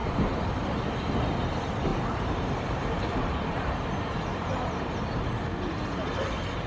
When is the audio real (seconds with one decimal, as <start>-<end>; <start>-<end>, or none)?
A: 0.8-1.9; 5.3-6.7